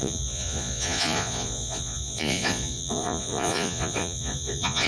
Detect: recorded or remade remade